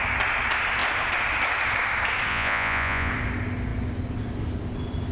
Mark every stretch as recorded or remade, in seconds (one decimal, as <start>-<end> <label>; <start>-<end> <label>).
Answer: 0.0-2.3 recorded; 2.3-3.1 remade; 3.1-5.1 recorded